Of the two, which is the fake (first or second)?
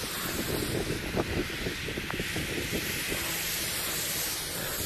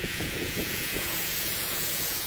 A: second